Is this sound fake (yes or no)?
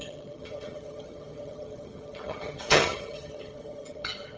yes